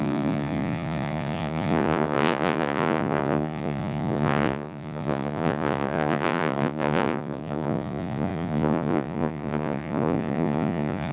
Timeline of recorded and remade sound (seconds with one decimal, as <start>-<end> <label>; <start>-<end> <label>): 0.0-11.1 remade